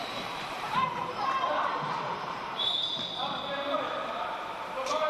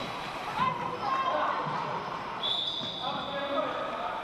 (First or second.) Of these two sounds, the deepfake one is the first